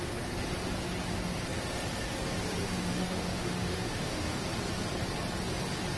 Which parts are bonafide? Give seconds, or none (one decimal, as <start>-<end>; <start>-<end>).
0.0-2.6; 4.4-6.0